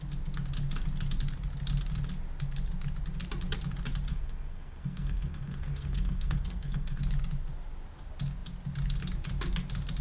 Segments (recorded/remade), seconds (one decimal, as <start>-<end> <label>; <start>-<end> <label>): 0.0-4.1 recorded; 4.1-7.0 remade; 7.0-10.0 recorded